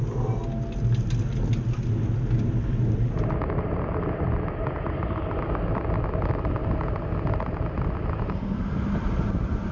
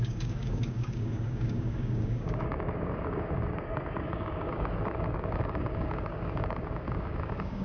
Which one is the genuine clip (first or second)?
first